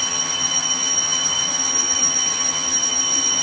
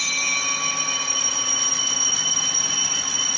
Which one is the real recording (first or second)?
second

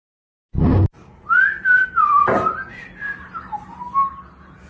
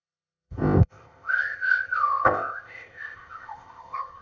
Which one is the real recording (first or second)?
first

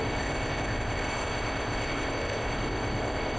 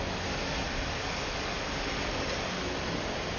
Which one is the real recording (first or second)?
second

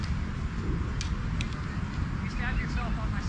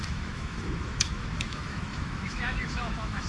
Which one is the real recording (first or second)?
first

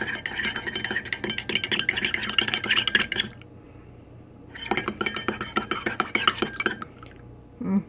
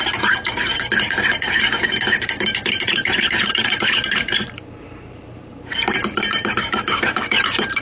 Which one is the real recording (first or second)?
first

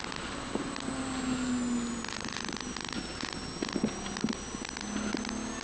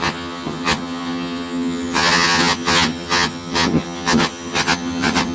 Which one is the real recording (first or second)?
first